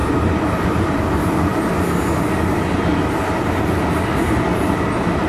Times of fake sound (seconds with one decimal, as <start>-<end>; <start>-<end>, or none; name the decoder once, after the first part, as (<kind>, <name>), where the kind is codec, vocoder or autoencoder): 0.0-1.5 (vocoder, BigVGAN v2); 4.6-5.3

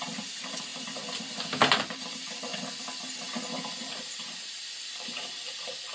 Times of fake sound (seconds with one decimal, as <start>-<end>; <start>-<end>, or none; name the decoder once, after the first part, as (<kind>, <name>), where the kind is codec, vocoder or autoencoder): 0.0-0.7 (vocoder, BigVGAN v2); 1.9-2.5; 3.9-5.9

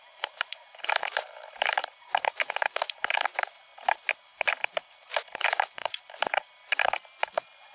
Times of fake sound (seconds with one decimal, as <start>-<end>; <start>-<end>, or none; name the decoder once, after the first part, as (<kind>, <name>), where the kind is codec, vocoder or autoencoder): 0.0-3.7 (vocoder, BigVGAN v2); 4.2-7.7

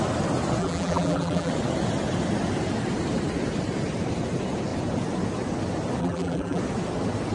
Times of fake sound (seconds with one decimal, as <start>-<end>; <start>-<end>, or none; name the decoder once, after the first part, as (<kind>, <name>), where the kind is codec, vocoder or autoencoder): 0.6-1.5 (vocoder, BigVGAN v2); 6.0-6.6

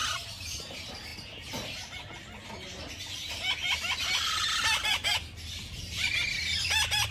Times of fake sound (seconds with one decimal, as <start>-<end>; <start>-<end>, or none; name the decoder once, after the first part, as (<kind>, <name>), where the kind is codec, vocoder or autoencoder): none

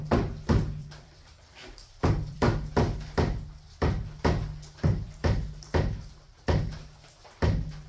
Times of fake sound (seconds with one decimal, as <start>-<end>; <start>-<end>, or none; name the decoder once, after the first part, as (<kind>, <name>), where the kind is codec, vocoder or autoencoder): 0.8-2.6 (vocoder, BigVGAN v2)